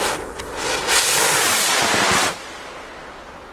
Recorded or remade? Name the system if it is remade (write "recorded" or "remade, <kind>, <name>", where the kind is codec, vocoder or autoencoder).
recorded